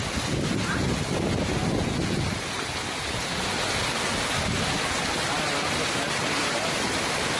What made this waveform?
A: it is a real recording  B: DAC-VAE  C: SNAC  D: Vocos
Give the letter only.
A